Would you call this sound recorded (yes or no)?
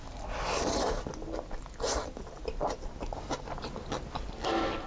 yes